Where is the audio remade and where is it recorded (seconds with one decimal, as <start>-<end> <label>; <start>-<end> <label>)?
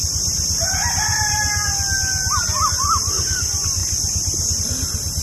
0.0-5.2 recorded